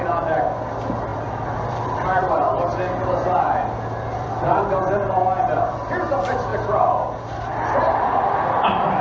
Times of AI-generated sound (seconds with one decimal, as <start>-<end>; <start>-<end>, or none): 1.1-2.3; 4.1-4.8